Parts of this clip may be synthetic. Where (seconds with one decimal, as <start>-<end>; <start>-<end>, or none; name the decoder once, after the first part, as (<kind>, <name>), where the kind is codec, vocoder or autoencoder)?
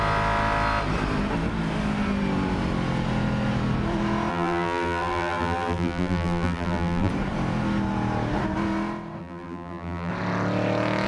4.3-7.1 (vocoder, BigVGAN v2); 9.2-10.1